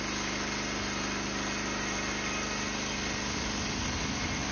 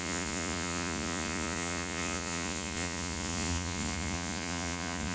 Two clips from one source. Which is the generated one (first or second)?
second